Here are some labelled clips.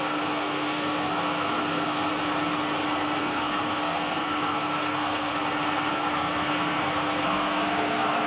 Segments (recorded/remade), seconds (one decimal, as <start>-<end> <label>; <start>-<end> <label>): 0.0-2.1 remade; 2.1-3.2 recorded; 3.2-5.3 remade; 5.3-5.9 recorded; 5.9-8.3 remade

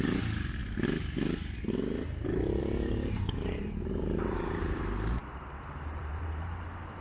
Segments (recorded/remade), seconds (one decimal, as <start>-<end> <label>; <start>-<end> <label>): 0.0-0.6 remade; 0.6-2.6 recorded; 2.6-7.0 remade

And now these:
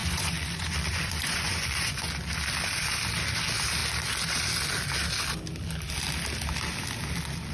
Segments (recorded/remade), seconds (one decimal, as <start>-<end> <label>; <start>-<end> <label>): 0.0-2.1 remade; 2.1-7.5 recorded

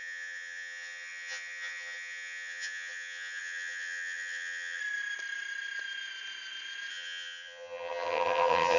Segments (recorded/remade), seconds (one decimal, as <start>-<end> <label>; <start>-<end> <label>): 0.0-4.8 remade; 4.8-6.9 recorded; 6.9-8.8 remade

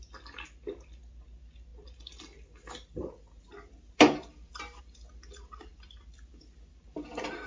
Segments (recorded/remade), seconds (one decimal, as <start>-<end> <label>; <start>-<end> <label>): 0.0-7.5 recorded

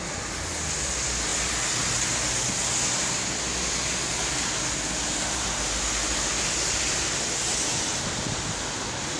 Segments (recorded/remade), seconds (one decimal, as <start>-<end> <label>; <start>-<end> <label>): 0.0-9.2 recorded

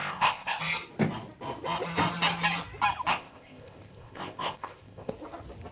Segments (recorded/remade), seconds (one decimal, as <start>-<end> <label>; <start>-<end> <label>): 0.0-0.6 remade; 0.6-3.1 recorded; 3.1-5.1 remade; 5.1-5.7 recorded

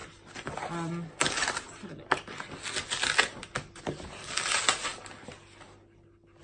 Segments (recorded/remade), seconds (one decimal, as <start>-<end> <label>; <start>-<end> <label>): 0.0-6.4 recorded